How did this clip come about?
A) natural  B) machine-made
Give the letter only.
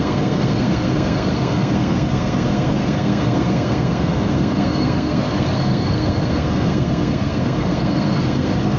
B